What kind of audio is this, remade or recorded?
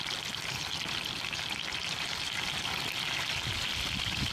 recorded